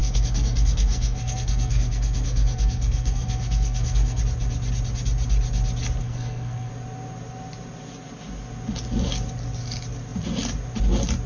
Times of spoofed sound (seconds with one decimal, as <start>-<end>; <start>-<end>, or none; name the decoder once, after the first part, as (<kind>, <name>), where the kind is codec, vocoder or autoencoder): 0.0-4.2 (codec, SNAC); 6.0-6.7